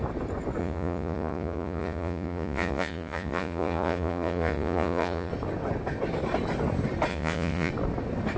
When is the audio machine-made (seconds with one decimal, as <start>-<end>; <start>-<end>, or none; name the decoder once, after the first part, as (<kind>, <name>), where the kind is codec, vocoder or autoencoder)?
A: 0.6-5.3 (vocoder, Vocos); 7.1-7.7